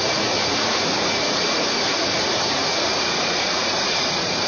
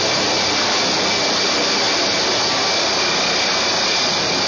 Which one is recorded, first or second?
second